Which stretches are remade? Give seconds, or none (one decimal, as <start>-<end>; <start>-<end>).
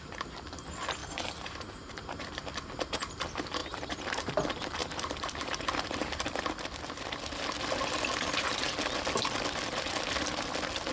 1.0-2.4; 3.6-4.3; 4.8-7.4